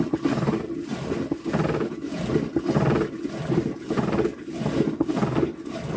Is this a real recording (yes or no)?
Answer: yes